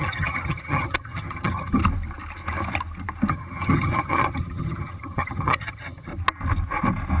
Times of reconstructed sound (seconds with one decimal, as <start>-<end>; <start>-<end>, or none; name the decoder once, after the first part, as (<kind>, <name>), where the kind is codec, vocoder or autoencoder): 0.0-1.8 (vocoder, HiFi-GAN); 3.3-6.1